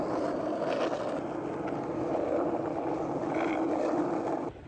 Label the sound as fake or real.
real